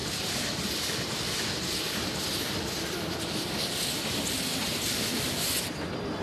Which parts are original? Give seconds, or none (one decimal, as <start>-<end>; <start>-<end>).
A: 3.6-4.5; 5.7-6.2

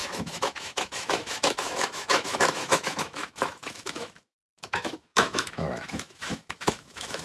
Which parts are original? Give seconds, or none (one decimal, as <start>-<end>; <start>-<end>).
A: none

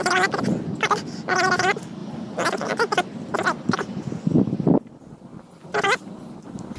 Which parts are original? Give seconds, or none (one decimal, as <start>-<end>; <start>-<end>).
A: 0.0-6.8